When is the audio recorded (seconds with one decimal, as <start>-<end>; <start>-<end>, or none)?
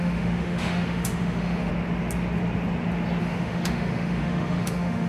1.7-3.2